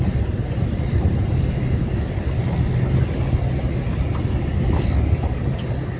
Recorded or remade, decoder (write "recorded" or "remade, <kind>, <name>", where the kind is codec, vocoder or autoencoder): recorded